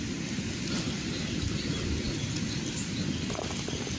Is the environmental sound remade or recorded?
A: recorded